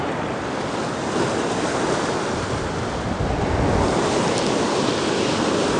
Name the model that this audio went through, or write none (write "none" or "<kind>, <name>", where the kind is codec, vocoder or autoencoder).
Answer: none